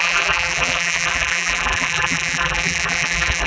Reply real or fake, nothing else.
fake